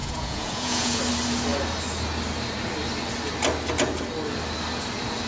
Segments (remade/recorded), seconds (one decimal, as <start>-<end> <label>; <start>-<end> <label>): 0.0-1.0 remade; 1.0-5.3 recorded